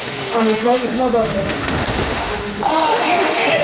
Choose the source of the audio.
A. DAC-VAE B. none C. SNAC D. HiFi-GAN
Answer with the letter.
A